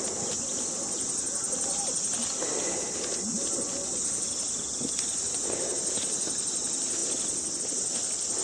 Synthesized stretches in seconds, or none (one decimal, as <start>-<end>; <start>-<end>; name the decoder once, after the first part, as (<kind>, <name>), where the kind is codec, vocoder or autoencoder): none